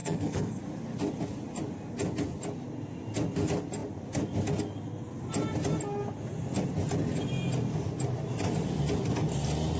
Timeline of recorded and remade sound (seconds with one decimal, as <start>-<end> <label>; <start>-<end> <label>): 0.0-0.6 remade; 0.6-9.8 recorded